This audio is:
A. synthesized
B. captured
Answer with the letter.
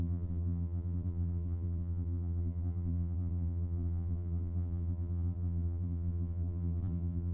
A